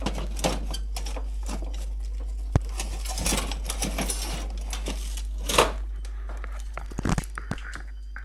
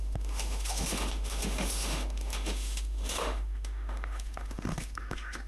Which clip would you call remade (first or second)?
second